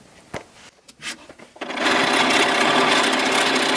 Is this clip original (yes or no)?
yes